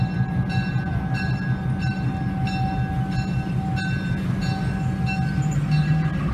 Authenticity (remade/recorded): recorded